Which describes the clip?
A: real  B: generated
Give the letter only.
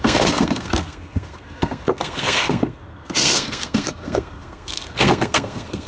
B